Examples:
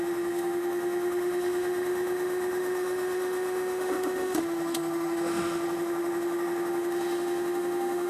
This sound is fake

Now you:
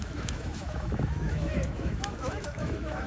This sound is fake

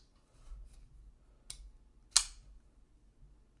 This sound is real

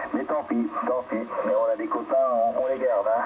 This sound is fake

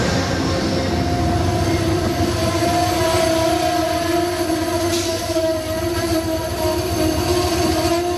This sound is real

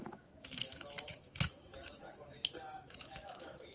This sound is fake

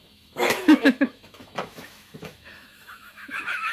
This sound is fake